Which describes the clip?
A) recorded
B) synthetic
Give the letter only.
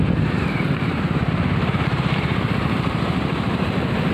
B